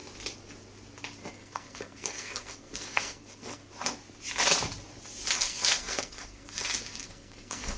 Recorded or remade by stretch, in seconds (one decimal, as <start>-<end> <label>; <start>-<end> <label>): 0.0-1.3 recorded; 1.3-3.6 remade; 3.6-5.3 recorded; 5.3-7.8 remade